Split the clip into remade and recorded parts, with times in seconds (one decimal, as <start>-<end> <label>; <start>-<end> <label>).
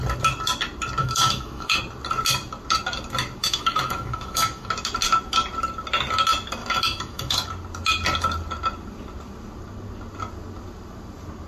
0.0-1.0 recorded; 1.0-1.8 remade; 1.8-3.4 recorded; 3.4-4.7 remade; 4.7-6.6 recorded; 6.6-7.5 remade; 7.5-11.5 recorded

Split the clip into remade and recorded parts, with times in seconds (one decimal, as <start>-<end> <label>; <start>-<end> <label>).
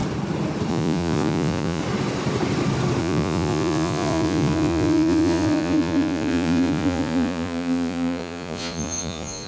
0.0-0.7 recorded; 0.7-1.8 remade; 1.8-3.0 recorded; 3.0-9.5 remade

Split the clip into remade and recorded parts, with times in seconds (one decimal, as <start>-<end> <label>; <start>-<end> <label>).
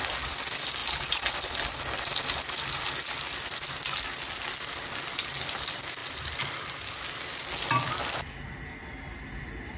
0.0-9.8 recorded